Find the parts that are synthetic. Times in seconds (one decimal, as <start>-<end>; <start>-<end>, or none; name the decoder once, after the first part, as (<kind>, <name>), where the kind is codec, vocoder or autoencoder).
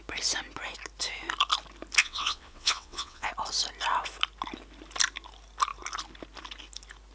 2.0-3.3 (vocoder, WaveNeXt)